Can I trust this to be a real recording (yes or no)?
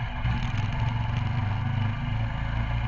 yes